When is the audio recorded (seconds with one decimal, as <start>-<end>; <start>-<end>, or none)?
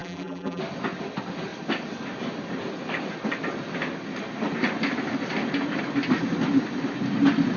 0.6-7.6